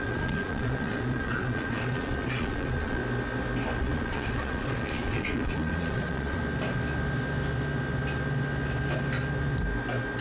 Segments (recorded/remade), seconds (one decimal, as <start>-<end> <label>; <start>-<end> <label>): 0.0-3.0 remade; 3.0-3.8 recorded; 3.8-6.4 remade; 6.4-10.2 recorded